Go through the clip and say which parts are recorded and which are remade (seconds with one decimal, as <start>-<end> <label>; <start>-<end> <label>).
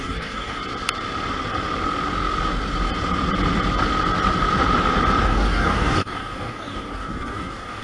0.0-0.6 remade; 0.6-5.3 recorded; 5.3-7.8 remade